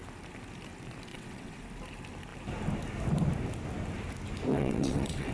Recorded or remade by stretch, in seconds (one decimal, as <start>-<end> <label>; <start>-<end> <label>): 0.0-1.1 recorded; 1.1-1.6 remade; 1.6-4.5 recorded; 4.5-5.3 remade